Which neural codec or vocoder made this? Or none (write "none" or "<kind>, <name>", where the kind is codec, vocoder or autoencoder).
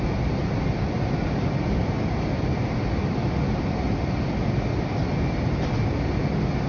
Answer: none